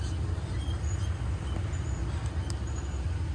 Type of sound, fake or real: real